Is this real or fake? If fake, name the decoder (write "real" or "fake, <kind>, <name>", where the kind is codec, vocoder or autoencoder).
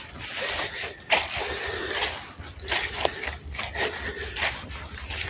real